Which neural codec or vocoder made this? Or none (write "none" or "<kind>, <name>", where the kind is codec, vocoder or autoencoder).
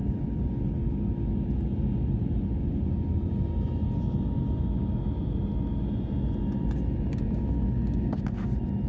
none